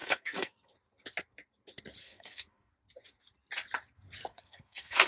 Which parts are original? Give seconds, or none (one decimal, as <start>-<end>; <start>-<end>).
0.7-2.0; 2.7-4.3